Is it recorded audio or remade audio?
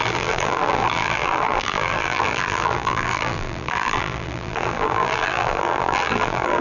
remade